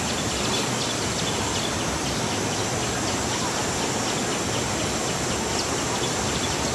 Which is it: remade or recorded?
recorded